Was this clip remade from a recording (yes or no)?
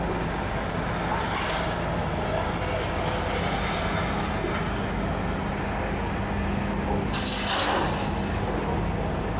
no